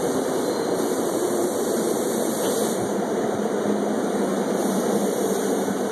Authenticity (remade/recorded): remade